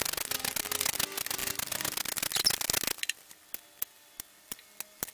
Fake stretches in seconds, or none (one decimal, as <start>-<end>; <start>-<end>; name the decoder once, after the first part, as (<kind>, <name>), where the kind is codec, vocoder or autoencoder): none